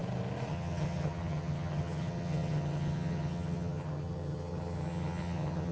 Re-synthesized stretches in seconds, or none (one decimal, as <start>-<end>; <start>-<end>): 0.5-5.7